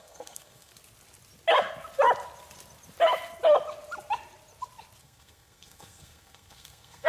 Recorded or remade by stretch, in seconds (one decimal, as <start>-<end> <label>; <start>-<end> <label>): 0.0-0.7 remade; 0.7-5.0 recorded; 5.0-7.1 remade